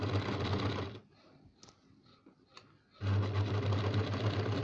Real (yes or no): yes